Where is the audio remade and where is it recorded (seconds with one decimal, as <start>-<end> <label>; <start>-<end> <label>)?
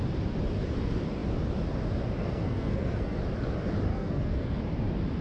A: 0.0-2.2 recorded; 2.2-3.2 remade; 3.2-3.9 recorded; 3.9-4.6 remade; 4.6-5.2 recorded